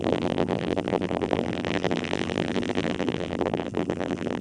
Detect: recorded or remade remade